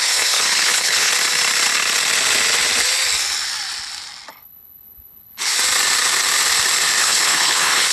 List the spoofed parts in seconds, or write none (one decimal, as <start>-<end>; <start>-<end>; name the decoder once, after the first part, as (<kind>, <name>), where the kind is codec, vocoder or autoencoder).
0.0-1.1 (codec, HILCodec); 4.3-5.5; 7.0-7.9